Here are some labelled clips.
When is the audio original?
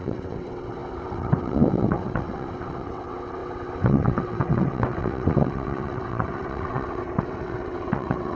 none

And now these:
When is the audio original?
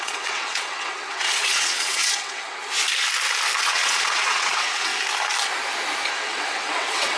2.6-3.6; 4.9-6.1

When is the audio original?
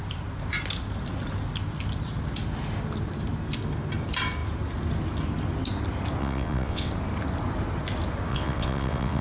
0.0-6.2; 6.9-8.3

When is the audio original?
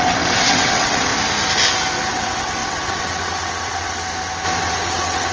1.1-2.1; 4.0-4.6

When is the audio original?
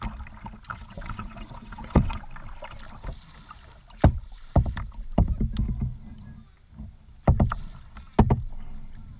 0.0-0.7; 2.2-9.2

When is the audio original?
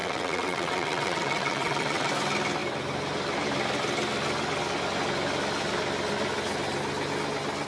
2.1-7.7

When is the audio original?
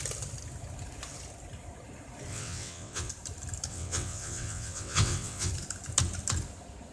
0.0-2.3; 3.1-3.7; 5.5-6.9